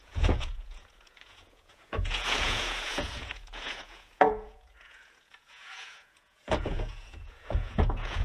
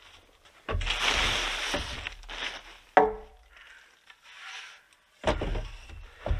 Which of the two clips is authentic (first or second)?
second